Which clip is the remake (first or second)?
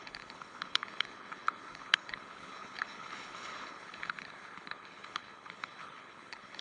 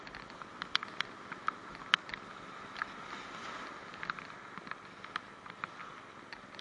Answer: first